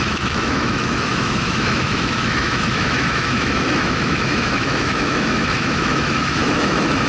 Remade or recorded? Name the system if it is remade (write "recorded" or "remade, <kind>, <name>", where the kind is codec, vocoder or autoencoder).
remade, autoencoder, DAC-VAE